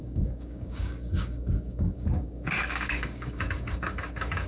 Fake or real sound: fake